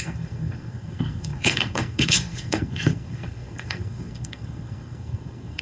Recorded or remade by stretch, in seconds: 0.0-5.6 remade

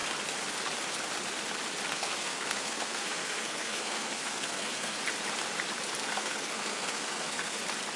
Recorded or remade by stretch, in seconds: 0.0-1.9 recorded; 1.9-5.0 remade; 5.0-6.0 recorded; 6.0-7.6 remade; 7.6-8.0 recorded

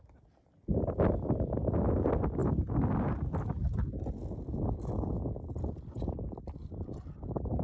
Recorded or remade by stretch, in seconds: 0.0-7.6 recorded